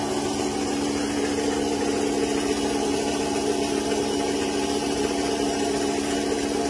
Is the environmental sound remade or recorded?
recorded